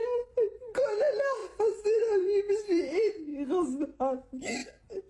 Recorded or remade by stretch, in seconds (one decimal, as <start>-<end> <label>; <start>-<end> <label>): 0.0-3.3 remade; 3.3-5.1 recorded